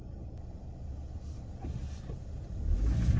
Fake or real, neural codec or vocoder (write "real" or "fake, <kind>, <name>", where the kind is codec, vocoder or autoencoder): real